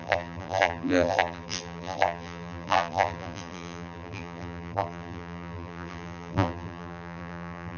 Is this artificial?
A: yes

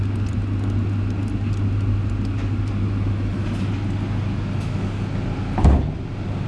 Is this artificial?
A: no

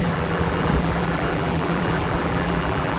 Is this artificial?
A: yes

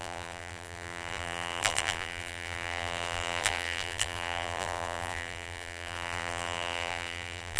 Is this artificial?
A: yes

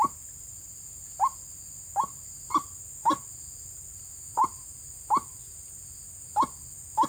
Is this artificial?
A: no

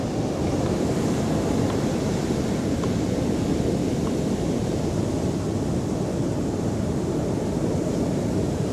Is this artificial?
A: no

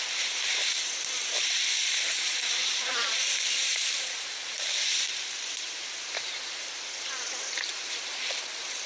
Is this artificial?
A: yes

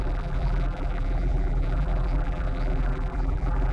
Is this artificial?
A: yes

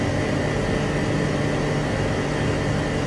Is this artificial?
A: no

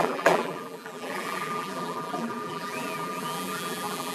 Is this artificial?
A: yes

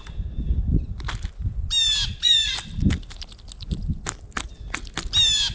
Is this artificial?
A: no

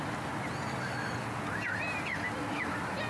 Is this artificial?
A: no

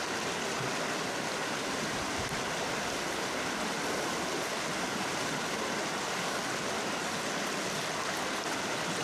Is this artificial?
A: no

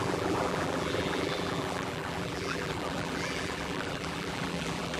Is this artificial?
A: yes